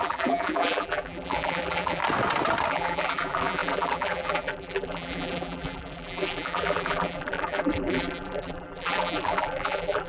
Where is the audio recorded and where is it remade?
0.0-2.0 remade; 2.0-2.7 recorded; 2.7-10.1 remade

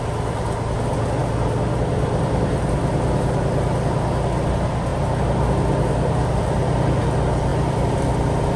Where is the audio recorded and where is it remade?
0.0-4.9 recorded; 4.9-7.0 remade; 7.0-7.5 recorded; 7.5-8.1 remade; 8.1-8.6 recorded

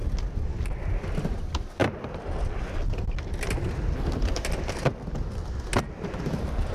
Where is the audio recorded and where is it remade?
0.0-6.7 recorded

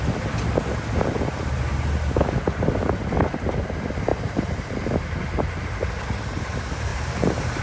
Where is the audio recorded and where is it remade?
0.0-4.1 recorded; 4.1-5.6 remade; 5.6-6.9 recorded; 6.9-7.6 remade

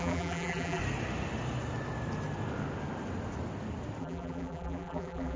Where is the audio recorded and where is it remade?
0.0-0.8 remade; 0.8-4.0 recorded; 4.0-5.4 remade

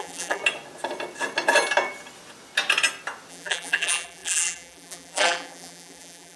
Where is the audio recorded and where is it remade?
0.0-0.4 remade; 0.4-3.3 recorded; 3.3-6.4 remade